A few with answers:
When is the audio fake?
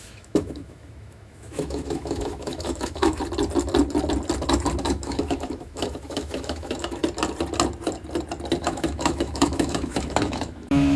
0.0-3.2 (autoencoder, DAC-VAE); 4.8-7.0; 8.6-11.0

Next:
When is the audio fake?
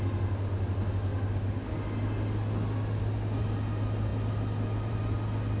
none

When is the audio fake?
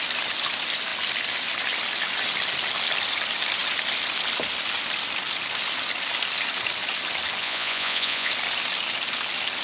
7.4-8.3 (vocoder, Vocos)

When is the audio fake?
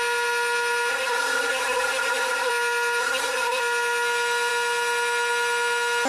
0.9-2.5 (codec, SNAC); 3.0-3.6